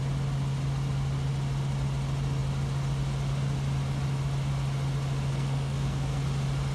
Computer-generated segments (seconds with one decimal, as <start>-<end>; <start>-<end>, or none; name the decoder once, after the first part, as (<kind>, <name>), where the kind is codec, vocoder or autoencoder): 5.3-6.2 (codec, SNAC)